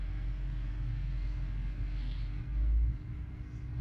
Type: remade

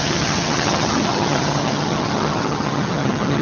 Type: remade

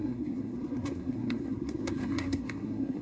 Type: remade